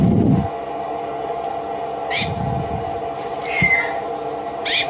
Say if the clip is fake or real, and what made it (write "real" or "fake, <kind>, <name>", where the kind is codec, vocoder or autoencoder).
real